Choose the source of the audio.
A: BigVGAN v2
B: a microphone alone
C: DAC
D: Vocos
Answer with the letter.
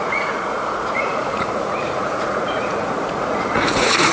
D